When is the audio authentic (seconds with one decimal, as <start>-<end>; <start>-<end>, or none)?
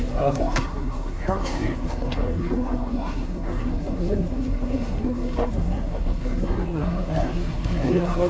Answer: none